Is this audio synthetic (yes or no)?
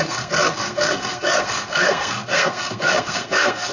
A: yes